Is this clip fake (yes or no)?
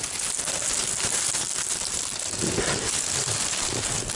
no